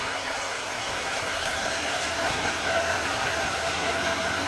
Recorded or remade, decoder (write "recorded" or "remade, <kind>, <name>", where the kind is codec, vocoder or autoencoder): remade, codec, SNAC